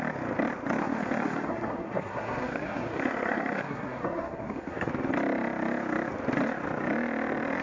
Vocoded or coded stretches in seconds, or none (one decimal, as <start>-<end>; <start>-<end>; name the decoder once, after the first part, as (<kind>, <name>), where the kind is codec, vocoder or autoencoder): 0.8-4.9 (codec, SNAC)